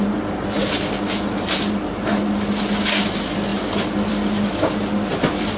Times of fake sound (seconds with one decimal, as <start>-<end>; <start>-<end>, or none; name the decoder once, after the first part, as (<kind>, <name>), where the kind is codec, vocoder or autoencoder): none